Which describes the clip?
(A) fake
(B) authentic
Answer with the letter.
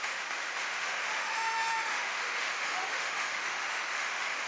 A